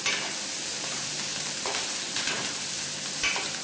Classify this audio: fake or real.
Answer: real